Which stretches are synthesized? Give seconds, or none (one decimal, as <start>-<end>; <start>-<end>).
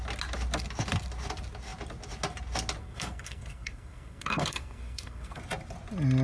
2.8-5.4